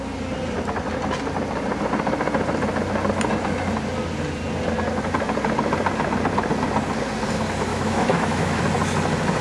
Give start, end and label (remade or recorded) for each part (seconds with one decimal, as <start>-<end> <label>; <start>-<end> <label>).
0.0-7.7 recorded; 7.7-8.6 remade; 8.6-9.4 recorded